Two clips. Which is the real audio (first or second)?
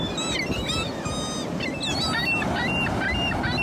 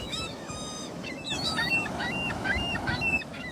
first